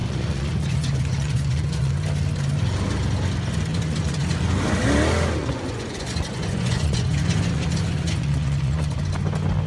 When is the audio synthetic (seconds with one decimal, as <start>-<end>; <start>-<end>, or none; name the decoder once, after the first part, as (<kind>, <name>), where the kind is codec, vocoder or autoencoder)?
0.0-1.9 (vocoder, Vocos); 3.7-4.6; 5.4-9.0